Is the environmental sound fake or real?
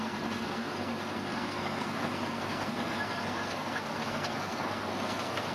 fake